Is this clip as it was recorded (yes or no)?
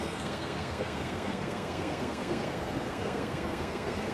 no